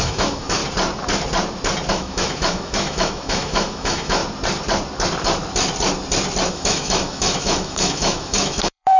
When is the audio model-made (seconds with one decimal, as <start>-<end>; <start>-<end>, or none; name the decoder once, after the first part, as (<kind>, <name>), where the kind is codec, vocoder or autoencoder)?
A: 0.0-0.6 (autoencoder, DAC-VAE); 1.9-4.2; 6.5-9.0